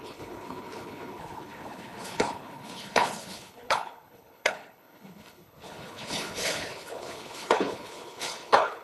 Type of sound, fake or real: fake